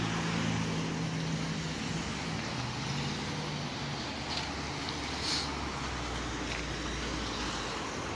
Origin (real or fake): real